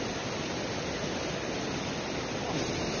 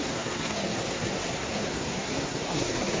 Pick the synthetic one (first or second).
second